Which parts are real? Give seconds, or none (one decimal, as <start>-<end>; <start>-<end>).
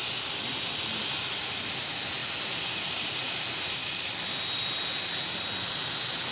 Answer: 0.0-2.2; 3.3-6.3